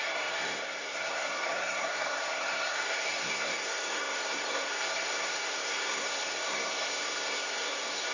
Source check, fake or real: fake